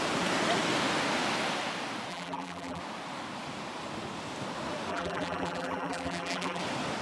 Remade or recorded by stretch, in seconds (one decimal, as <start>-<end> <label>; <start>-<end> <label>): 0.0-2.1 recorded; 2.1-2.8 remade; 2.8-4.9 recorded; 4.9-6.6 remade; 6.6-7.0 recorded